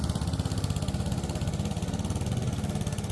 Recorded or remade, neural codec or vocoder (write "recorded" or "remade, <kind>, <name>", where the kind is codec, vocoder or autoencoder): recorded